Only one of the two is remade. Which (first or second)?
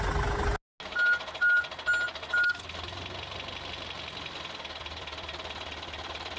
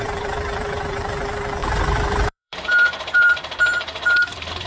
second